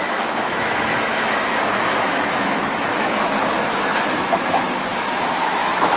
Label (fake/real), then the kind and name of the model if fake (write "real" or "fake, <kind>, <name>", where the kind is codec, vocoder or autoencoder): fake, autoencoder, DAC-VAE